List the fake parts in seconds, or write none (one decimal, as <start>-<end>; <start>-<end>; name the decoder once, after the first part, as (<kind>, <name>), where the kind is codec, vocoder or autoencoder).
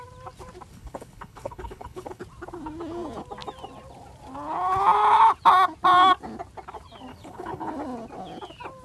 0.7-2.2 (codec, HILCodec); 7.1-7.7